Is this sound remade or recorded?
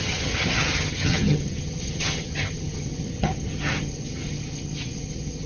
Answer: remade